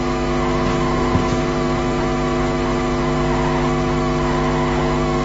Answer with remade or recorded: recorded